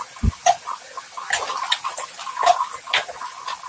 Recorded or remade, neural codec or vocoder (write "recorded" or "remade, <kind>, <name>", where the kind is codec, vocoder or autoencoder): recorded